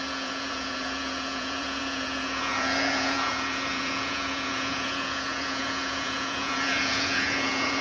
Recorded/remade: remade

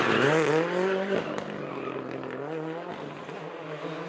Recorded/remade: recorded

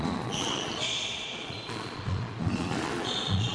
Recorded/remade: remade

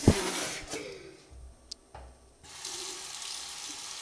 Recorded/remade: recorded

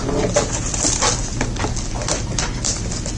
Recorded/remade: recorded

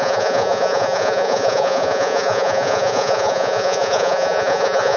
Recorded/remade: remade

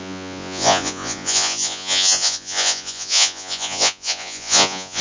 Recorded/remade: remade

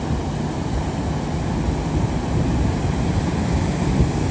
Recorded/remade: recorded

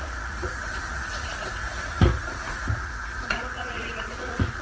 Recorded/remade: remade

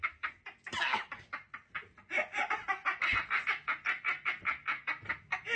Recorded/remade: recorded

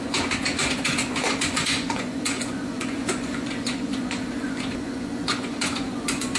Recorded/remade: remade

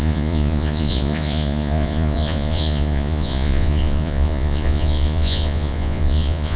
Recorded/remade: remade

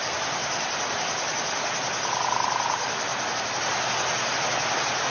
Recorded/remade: recorded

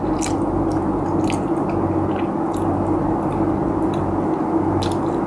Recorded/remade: recorded